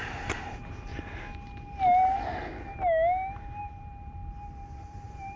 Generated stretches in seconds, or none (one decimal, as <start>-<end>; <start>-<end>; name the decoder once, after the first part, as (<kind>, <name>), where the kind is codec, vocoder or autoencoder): 0.0-0.9 (vocoder, BigVGAN v2); 3.6-4.2; 4.8-5.4